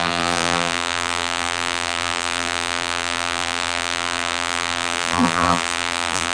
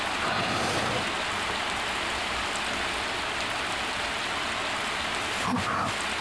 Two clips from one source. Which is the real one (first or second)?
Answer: second